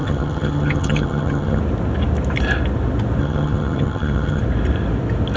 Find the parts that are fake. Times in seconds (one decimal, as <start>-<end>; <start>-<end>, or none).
0.0-1.6; 3.2-4.4